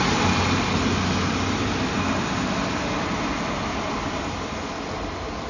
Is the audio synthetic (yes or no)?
no